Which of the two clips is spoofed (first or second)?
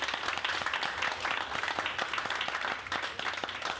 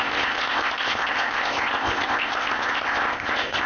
second